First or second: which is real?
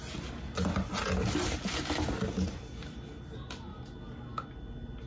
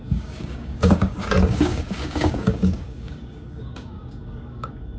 first